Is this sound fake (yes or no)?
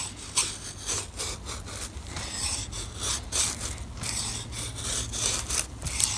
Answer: no